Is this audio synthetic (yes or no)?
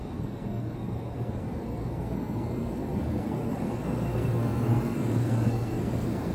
yes